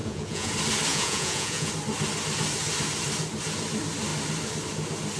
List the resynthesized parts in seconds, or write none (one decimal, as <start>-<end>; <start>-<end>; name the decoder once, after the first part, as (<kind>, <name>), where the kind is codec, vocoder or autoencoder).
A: 0.0-0.5 (vocoder, Vocos); 0.9-1.7